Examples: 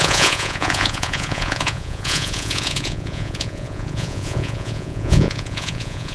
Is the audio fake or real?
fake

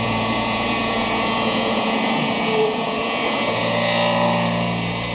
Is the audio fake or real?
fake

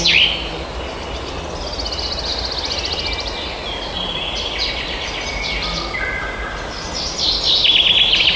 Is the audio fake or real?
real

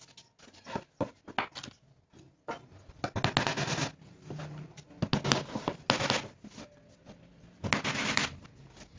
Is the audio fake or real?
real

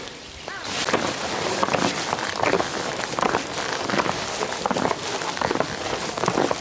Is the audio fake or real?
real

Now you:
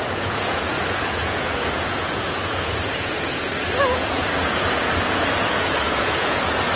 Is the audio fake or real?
fake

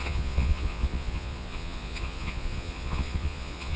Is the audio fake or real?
fake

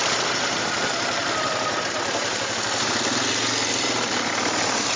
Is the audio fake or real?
real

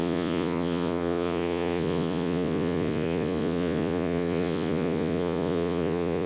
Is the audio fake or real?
fake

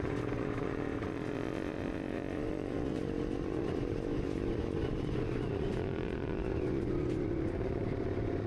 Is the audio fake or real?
fake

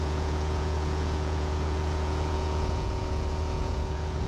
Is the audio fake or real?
fake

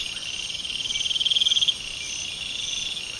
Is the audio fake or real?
real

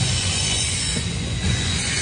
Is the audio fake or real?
fake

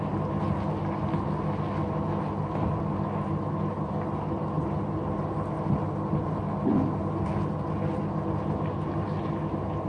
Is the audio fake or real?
real